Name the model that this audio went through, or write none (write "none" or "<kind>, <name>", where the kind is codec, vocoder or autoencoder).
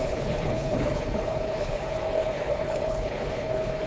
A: codec, HILCodec